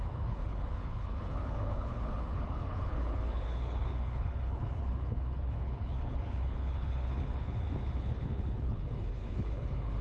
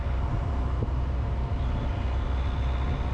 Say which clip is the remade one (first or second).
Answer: first